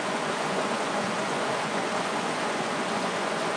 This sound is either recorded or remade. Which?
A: remade